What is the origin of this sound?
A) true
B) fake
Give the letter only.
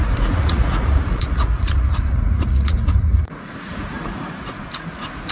B